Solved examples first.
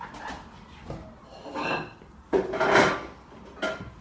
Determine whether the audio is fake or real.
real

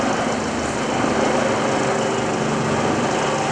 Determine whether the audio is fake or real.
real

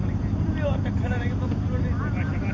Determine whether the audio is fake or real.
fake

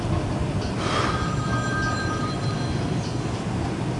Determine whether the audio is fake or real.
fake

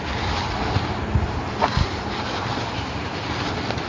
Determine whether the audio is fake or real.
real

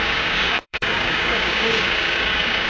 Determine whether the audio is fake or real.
fake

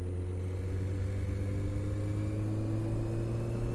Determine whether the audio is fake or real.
real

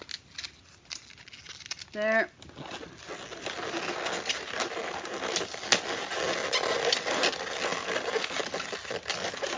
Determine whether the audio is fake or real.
real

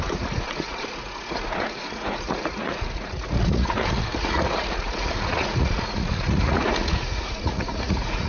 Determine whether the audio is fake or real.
fake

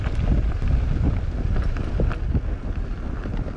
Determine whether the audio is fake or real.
real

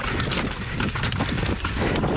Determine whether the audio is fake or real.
real